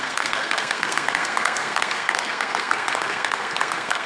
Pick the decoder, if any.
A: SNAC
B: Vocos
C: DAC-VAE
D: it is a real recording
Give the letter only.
A